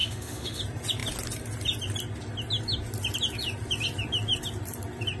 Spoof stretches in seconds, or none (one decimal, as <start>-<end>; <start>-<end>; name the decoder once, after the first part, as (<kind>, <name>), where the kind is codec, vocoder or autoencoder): 0.0-0.6 (autoencoder, DAC-VAE)